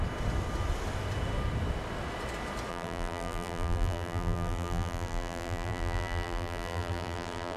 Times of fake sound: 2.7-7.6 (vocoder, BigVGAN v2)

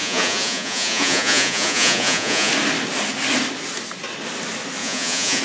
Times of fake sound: 0.0-2.5 (vocoder, Vocos); 4.8-5.4

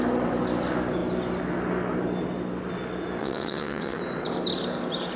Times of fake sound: 3.2-4.0 (vocoder, WaveNeXt)